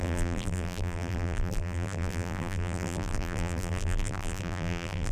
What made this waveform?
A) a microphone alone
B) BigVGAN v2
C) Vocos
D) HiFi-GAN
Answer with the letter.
B